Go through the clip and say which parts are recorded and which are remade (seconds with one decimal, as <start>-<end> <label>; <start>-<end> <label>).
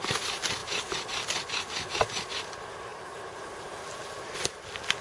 0.0-2.9 recorded; 2.9-4.2 remade; 4.2-5.0 recorded